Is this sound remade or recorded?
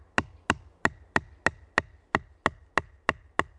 recorded